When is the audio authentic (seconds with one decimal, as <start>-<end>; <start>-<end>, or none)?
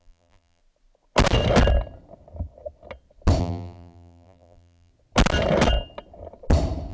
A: 0.6-3.4; 4.9-6.9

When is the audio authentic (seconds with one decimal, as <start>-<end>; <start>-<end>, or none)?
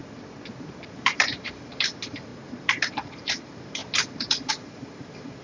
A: 0.0-1.0; 2.3-2.9; 3.8-4.5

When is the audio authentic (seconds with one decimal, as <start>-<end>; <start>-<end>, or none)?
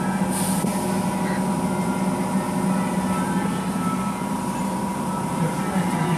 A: 0.0-4.9; 5.6-6.2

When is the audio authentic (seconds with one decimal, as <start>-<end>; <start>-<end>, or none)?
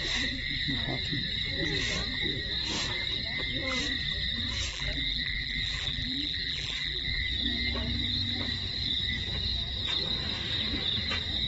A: 0.0-4.7; 7.2-11.5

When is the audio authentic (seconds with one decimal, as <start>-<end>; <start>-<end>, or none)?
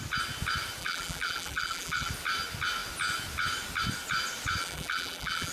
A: 0.0-0.8; 2.1-4.6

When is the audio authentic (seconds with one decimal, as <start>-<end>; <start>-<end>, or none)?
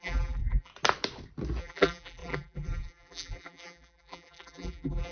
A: 0.7-1.6